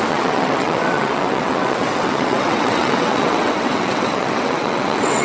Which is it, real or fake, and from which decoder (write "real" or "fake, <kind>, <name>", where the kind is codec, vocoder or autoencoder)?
fake, vocoder, WaveNeXt